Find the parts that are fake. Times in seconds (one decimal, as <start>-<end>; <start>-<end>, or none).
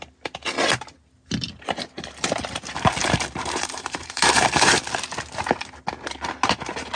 3.0-4.7